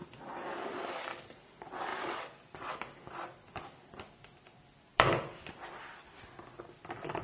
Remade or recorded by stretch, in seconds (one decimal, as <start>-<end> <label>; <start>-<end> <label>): 0.0-1.3 remade; 1.3-1.9 recorded; 1.9-2.7 remade; 2.7-4.9 recorded; 4.9-6.6 remade; 6.6-7.2 recorded